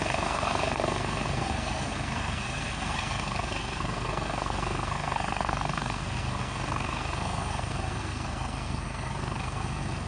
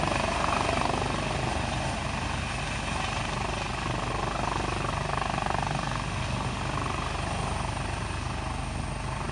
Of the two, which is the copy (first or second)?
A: first